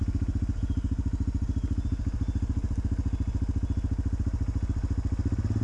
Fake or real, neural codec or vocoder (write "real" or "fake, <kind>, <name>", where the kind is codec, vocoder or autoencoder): real